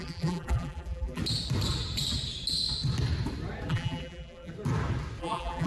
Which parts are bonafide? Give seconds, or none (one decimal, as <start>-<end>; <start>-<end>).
1.2-3.7; 4.5-5.2